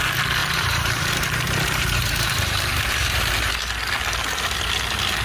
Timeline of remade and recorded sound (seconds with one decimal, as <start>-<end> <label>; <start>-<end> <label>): 0.0-0.4 recorded; 0.4-3.3 remade; 3.3-5.2 recorded